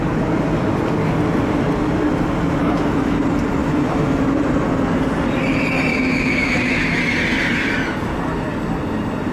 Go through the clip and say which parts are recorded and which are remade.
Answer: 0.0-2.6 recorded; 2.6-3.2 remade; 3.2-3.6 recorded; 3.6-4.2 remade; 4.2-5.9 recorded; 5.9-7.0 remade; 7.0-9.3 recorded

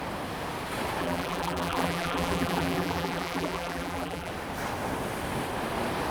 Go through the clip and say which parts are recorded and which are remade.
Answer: 0.0-1.0 recorded; 1.0-4.3 remade; 4.3-6.1 recorded

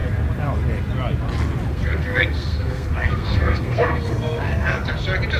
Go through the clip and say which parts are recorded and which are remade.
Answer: 0.0-1.7 recorded; 1.7-4.9 remade; 4.9-5.4 recorded

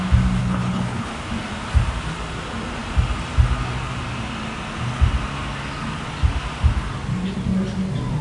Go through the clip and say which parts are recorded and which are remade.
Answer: 0.0-0.4 recorded; 0.4-1.1 remade; 1.1-8.2 recorded

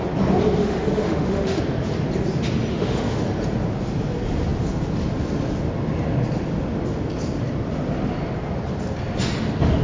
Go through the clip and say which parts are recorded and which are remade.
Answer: 0.0-0.6 recorded; 0.6-1.6 remade; 1.6-2.7 recorded; 2.7-3.2 remade; 3.2-9.8 recorded

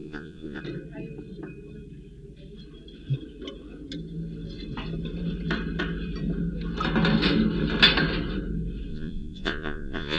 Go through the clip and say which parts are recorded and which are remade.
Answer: 0.0-0.6 remade; 0.6-8.9 recorded; 8.9-10.2 remade

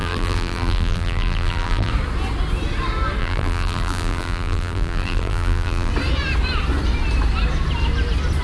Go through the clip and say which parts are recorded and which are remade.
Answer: 0.0-1.9 remade; 1.9-3.2 recorded; 3.2-5.9 remade; 5.9-8.4 recorded